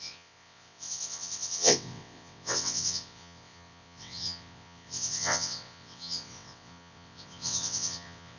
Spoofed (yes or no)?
yes